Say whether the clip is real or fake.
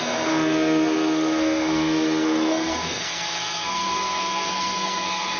fake